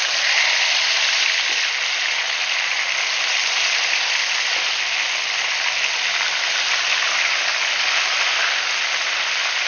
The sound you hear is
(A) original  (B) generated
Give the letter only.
A